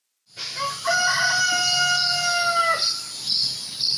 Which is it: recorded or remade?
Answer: recorded